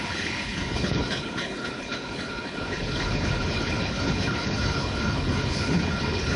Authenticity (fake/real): fake